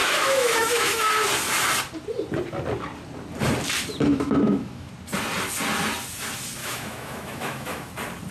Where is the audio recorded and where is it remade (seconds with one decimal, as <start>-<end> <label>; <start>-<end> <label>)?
0.0-1.1 remade; 1.1-4.1 recorded; 4.1-4.9 remade; 4.9-6.6 recorded; 6.6-7.9 remade; 7.9-8.3 recorded